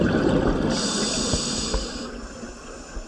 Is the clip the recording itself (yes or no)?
yes